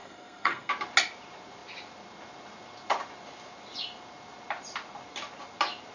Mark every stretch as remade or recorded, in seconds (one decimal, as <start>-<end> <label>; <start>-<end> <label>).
0.0-0.7 remade; 0.7-5.9 recorded